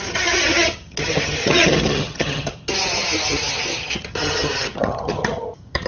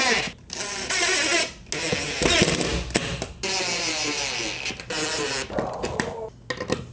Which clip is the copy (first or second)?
first